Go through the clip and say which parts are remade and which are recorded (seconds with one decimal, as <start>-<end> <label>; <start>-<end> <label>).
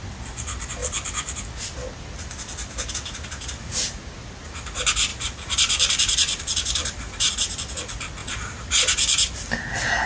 0.0-5.1 recorded; 5.1-7.3 remade; 7.3-8.2 recorded; 8.2-8.9 remade; 8.9-10.1 recorded